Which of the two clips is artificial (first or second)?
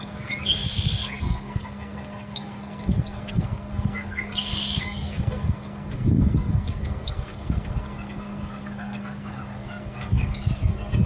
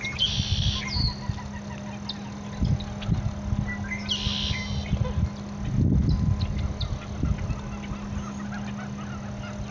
first